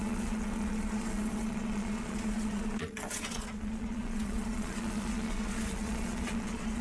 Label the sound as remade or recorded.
remade